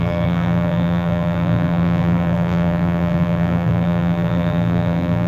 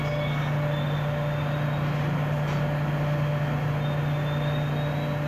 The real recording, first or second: second